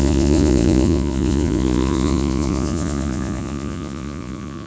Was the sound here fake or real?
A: fake